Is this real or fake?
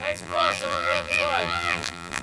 fake